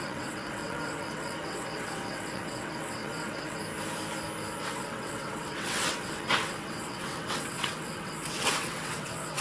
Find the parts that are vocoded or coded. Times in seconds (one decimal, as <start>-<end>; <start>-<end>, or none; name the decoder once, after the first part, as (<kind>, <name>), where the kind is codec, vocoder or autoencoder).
0.0-3.6 (vocoder, WaveNeXt); 4.6-9.4